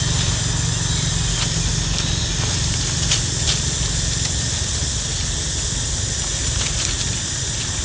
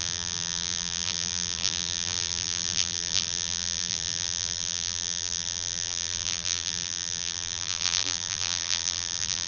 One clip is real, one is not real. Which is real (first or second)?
first